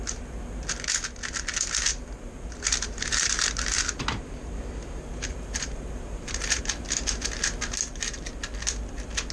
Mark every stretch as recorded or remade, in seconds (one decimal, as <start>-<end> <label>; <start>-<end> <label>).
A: 0.0-1.9 recorded; 1.9-6.6 remade; 6.6-9.3 recorded